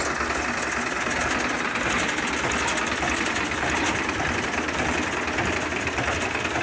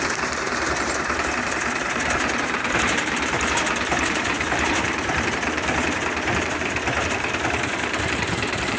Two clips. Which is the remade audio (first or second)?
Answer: second